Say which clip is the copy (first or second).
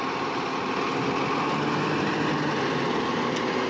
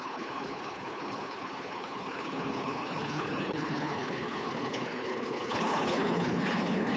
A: second